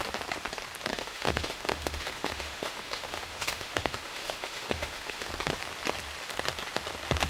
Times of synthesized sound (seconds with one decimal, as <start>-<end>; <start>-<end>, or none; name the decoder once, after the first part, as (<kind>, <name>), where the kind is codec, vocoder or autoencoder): 0.9-5.3 (autoencoder, DAC-VAE)